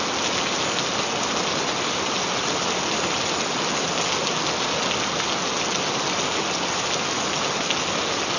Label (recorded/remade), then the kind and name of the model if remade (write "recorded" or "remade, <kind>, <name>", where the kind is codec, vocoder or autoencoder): recorded